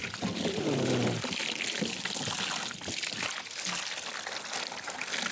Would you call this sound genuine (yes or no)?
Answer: yes